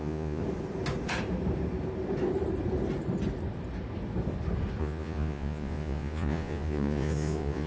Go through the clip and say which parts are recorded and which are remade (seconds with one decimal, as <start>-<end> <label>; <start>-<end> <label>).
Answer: 0.0-0.4 remade; 0.4-4.8 recorded; 4.8-7.7 remade